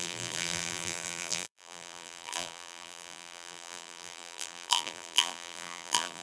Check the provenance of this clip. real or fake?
fake